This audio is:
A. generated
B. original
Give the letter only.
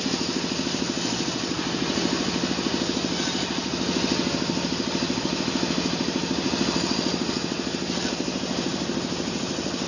B